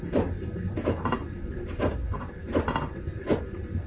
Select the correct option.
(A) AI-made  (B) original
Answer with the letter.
B